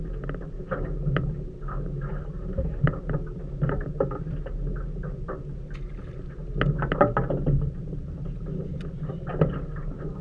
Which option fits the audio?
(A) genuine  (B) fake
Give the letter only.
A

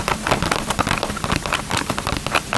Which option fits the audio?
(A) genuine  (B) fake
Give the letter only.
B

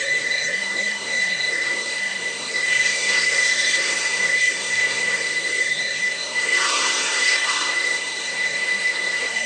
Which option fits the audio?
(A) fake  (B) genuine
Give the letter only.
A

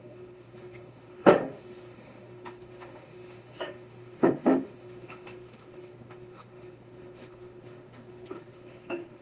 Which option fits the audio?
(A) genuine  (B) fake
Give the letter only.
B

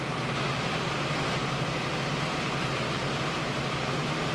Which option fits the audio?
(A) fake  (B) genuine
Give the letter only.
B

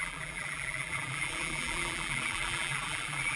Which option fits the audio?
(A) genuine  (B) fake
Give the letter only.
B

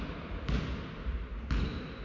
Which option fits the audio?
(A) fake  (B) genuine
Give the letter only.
B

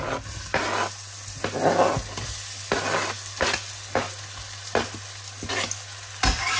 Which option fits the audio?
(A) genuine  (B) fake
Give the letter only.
A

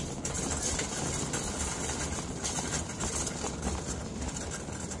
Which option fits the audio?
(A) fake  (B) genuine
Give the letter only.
B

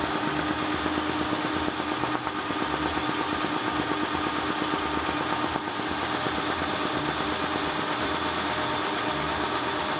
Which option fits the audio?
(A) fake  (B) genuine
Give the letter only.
B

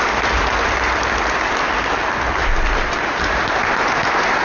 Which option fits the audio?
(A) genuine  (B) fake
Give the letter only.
B